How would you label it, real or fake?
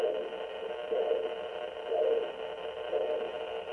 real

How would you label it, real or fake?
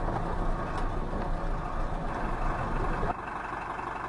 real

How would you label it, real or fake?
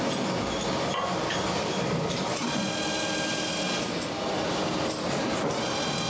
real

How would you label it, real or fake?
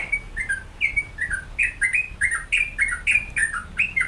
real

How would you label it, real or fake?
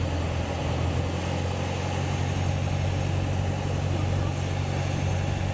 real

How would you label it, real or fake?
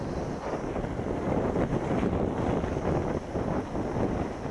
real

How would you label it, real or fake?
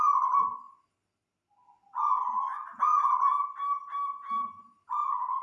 real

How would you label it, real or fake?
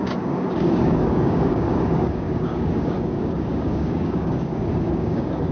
fake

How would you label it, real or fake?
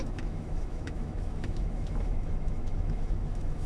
fake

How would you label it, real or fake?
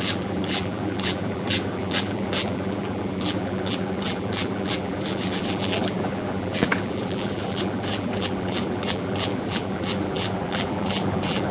fake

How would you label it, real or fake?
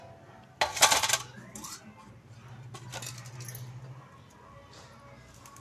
real